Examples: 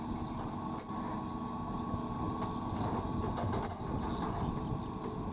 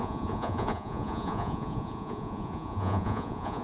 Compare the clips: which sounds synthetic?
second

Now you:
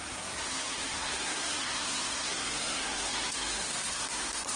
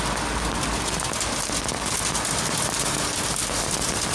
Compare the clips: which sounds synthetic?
first